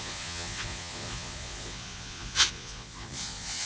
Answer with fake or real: fake